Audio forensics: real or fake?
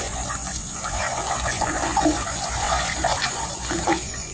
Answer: fake